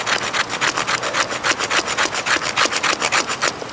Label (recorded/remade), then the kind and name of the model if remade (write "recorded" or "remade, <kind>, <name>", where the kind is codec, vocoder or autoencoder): recorded